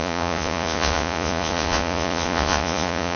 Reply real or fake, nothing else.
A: fake